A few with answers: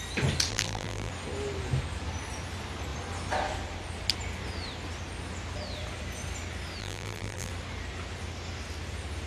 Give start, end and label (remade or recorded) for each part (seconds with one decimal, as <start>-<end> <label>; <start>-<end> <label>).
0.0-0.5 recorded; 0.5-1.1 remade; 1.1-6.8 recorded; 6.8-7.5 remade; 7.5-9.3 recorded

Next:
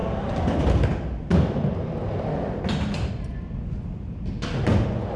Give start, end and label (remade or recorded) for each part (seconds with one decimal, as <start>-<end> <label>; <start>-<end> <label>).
0.0-5.2 recorded

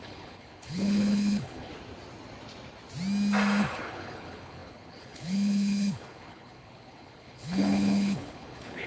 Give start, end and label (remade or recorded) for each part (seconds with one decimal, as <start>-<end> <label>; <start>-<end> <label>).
0.0-1.7 remade; 1.7-3.6 recorded; 3.6-8.9 remade